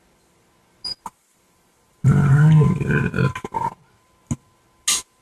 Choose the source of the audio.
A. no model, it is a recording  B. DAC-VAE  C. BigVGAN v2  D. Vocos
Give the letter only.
A